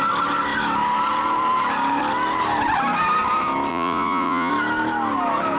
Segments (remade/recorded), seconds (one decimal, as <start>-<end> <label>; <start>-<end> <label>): 0.0-3.7 recorded; 3.7-4.5 remade; 4.5-5.6 recorded